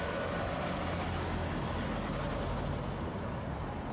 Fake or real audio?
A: real